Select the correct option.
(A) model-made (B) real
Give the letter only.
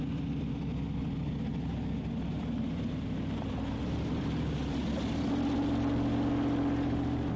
A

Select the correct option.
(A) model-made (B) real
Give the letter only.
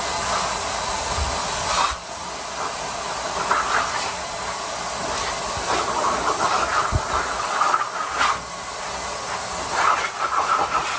B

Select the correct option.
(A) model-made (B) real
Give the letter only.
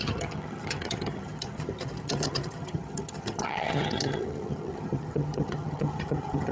A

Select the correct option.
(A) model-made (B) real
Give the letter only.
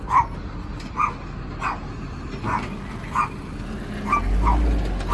B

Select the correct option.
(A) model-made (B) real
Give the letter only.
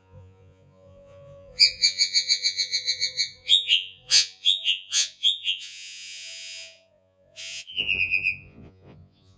A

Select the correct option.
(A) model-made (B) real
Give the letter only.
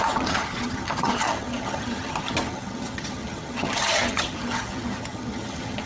A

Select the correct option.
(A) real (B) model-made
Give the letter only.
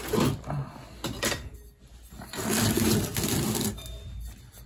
A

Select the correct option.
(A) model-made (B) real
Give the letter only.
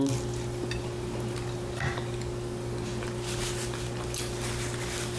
B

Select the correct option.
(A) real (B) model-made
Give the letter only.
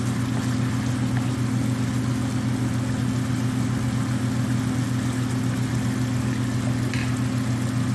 A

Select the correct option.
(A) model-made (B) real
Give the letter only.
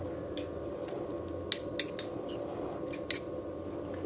B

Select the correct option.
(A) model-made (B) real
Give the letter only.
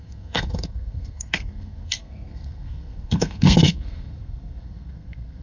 A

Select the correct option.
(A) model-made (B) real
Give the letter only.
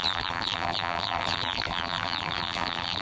A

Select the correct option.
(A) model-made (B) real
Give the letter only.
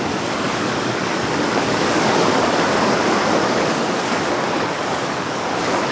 A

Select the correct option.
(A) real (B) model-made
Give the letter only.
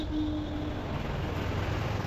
A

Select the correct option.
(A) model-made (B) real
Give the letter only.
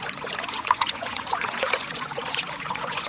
A